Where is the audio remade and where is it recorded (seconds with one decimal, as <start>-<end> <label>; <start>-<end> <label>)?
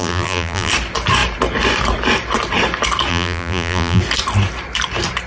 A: 0.0-0.7 remade; 0.7-3.1 recorded; 3.1-4.0 remade; 4.0-5.3 recorded